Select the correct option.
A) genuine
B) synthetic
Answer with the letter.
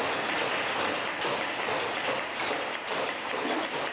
A